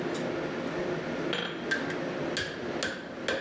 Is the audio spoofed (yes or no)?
no